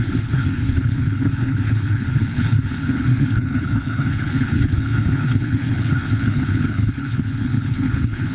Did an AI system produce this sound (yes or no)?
yes